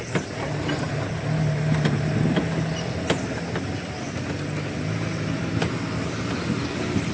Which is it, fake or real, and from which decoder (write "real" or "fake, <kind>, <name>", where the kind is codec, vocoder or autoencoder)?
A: real